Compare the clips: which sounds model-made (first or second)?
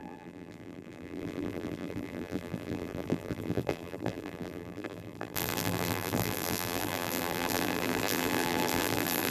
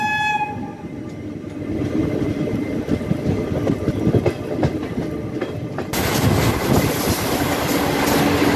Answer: first